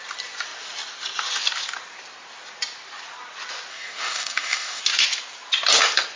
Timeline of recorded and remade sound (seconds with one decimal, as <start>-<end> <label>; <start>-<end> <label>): 0.0-3.7 recorded; 3.7-4.8 remade; 4.8-6.2 recorded